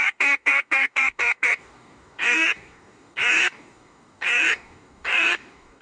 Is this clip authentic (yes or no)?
no